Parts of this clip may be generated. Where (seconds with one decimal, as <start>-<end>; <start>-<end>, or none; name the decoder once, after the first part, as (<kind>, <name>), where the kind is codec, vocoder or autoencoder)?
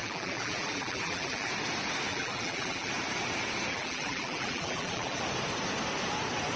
0.0-1.5 (vocoder, BigVGAN v2); 2.1-2.9; 3.7-5.2